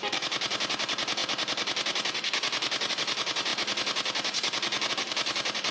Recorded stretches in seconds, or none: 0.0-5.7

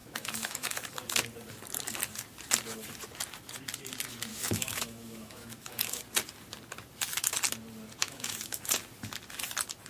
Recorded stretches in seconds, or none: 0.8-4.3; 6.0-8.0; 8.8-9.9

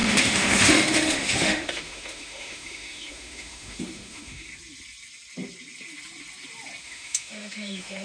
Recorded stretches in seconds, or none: 4.5-6.8

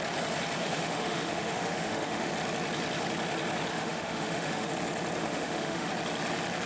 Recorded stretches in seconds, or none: 0.0-0.6; 2.3-3.7; 4.7-5.2; 5.9-6.7

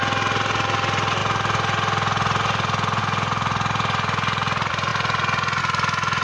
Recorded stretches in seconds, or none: 0.0-6.2

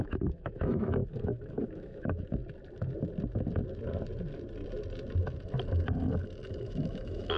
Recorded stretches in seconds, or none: 2.4-6.6